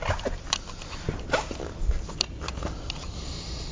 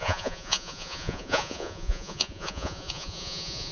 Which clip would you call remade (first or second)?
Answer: second